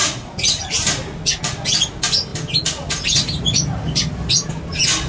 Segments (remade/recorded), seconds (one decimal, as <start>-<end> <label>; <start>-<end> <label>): 0.0-0.6 remade; 0.6-5.1 recorded